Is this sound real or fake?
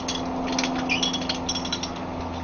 real